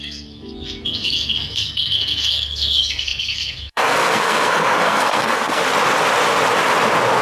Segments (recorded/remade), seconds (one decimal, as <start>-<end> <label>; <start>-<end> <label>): 0.0-5.6 remade; 5.6-7.2 recorded